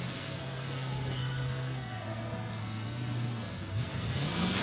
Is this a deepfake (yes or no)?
yes